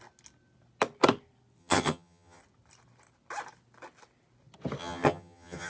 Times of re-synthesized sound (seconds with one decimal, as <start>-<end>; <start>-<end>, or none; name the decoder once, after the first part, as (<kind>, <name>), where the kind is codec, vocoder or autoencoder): 1.6-2.4 (vocoder, HiFi-GAN); 4.8-5.7